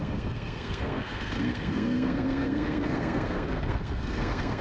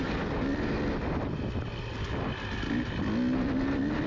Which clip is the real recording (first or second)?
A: second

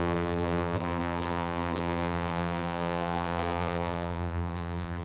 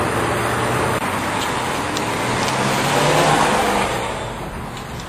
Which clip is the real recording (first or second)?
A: second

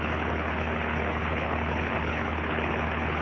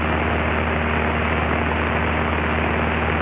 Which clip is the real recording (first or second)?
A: second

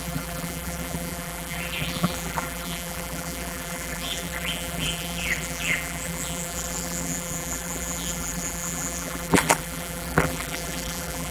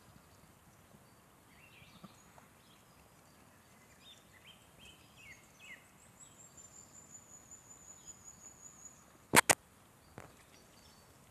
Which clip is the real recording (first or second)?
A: second